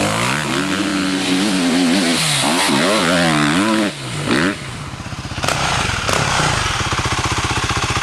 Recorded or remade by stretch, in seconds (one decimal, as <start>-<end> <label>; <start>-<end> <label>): 0.0-8.0 recorded